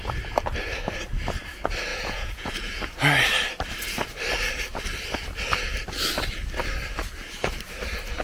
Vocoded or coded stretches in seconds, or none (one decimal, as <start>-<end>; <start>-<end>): 1.9-3.0